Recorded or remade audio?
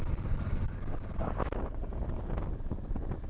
recorded